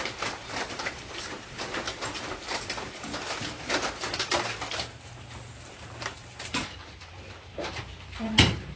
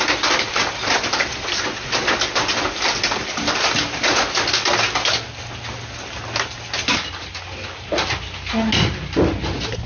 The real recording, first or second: second